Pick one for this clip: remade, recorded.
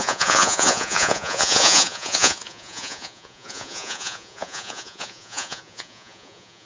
remade